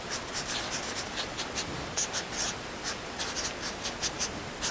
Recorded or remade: recorded